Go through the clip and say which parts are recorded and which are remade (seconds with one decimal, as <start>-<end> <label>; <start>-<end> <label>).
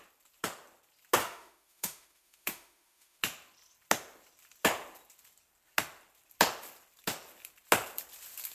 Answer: 0.0-1.2 recorded; 1.2-3.2 remade; 3.2-8.5 recorded